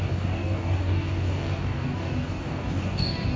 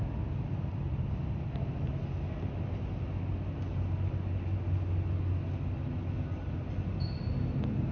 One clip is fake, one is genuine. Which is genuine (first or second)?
second